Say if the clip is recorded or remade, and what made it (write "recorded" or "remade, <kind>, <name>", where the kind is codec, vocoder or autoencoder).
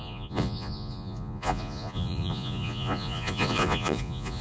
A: remade, vocoder, Vocos